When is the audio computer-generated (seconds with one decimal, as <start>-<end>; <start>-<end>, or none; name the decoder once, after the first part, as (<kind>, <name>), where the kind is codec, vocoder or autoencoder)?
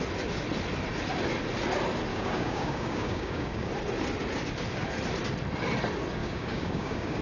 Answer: 2.1-3.7 (codec, DAC); 6.2-7.2